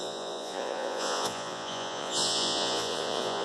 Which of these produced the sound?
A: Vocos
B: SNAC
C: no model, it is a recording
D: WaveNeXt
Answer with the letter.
A